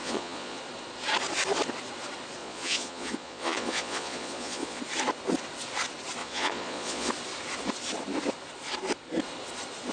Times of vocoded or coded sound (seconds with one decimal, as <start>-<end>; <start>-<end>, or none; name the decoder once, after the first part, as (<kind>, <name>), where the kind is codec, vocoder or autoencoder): 0.0-0.6 (vocoder, Vocos); 2.4-4.8; 6.2-7.1